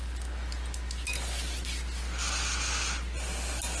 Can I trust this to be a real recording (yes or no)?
yes